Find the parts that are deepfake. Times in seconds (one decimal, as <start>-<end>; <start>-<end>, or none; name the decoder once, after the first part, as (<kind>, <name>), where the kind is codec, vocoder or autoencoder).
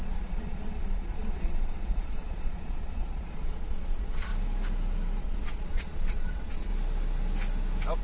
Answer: 0.0-4.3 (vocoder, Vocos); 5.2-6.7